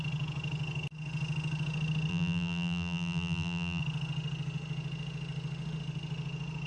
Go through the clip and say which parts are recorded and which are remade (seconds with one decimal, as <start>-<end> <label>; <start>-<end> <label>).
0.0-2.1 recorded; 2.1-3.8 remade; 3.8-6.7 recorded